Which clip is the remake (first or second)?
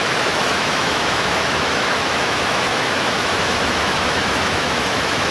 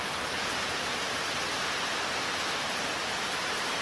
first